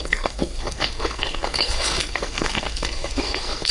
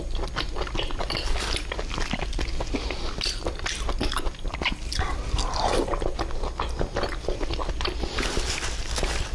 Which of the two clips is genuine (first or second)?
second